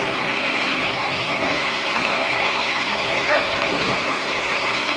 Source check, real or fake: fake